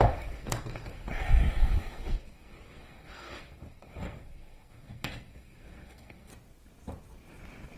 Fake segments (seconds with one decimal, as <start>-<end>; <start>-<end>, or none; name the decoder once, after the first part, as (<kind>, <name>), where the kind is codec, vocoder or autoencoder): 0.0-6.3 (codec, SNAC)